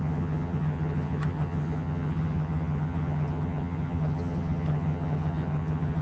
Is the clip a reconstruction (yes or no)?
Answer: yes